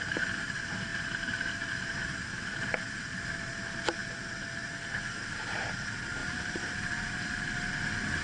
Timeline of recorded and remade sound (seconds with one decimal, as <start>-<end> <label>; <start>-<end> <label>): 0.0-0.9 recorded; 0.9-3.5 remade; 3.5-4.0 recorded; 4.0-4.7 remade; 4.7-6.2 recorded; 6.2-7.7 remade; 7.7-8.2 recorded

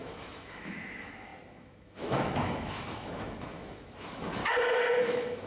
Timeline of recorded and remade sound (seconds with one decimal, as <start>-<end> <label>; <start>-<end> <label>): 0.0-4.4 remade; 4.4-5.0 recorded; 5.0-5.5 remade

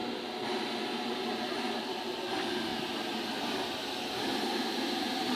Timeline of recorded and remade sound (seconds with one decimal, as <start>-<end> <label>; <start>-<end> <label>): 0.0-1.6 recorded; 1.6-2.7 remade; 2.7-4.1 recorded; 4.1-5.4 remade

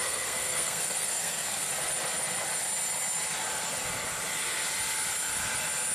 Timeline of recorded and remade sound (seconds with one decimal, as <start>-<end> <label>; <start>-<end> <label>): 0.0-1.7 remade; 1.7-5.9 recorded

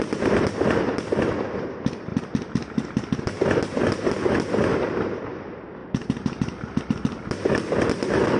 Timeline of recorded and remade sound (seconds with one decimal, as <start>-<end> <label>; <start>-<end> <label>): 0.0-4.7 recorded; 4.7-5.2 remade; 5.2-5.8 recorded; 5.8-6.8 remade; 6.8-8.4 recorded